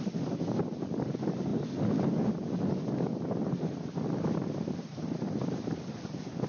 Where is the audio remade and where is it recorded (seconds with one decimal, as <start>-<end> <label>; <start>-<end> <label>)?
0.0-6.5 recorded